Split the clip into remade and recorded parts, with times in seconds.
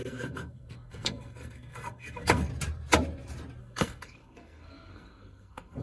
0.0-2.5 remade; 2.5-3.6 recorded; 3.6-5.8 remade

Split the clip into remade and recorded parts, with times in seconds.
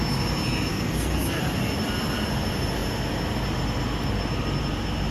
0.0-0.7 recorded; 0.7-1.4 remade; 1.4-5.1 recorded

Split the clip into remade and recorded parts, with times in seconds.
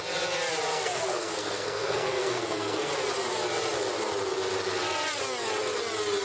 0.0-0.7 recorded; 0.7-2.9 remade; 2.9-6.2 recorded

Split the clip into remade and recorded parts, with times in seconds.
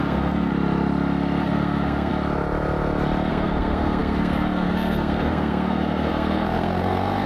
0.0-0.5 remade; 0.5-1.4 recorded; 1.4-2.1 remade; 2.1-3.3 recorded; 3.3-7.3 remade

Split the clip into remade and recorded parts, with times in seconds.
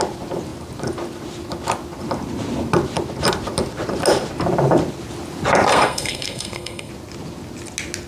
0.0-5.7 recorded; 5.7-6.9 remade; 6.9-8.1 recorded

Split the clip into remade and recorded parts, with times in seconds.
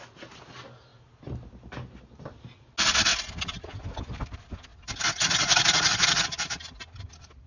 0.0-7.5 recorded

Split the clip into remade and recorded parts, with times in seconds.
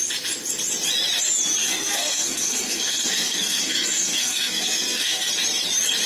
0.0-1.6 recorded; 1.6-5.3 remade; 5.3-6.1 recorded